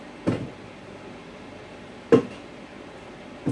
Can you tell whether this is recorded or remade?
recorded